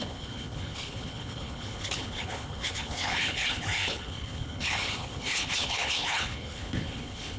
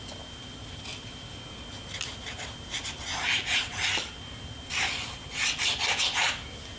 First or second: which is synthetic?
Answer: first